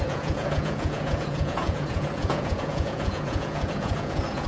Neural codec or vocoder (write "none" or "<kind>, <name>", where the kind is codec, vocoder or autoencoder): vocoder, Vocos